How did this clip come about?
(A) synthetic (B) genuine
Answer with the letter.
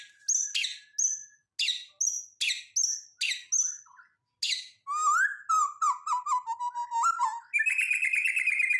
B